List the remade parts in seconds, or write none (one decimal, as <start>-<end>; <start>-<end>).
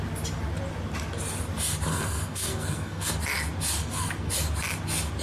1.9-3.1; 3.8-4.3